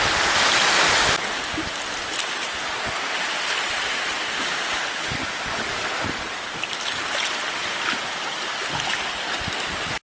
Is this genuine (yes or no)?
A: yes